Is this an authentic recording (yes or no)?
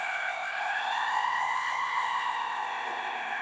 no